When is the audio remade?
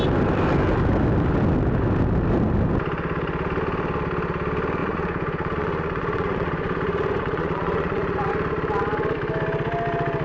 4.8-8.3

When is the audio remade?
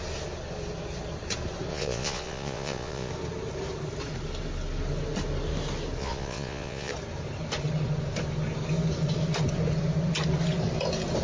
1.7-3.1; 6.0-6.9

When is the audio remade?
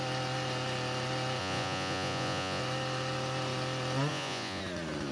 1.4-2.6; 4.1-4.6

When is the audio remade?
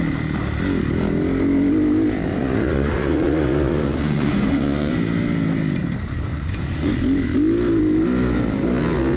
2.3-4.9; 6.3-6.9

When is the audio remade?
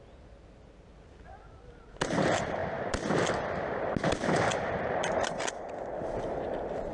none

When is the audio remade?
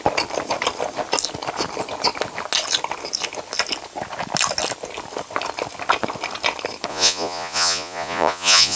6.9-8.8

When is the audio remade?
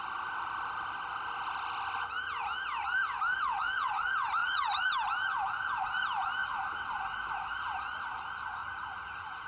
4.4-4.9; 8.6-9.5